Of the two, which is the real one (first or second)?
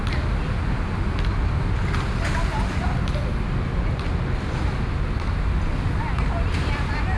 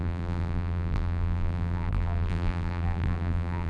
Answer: first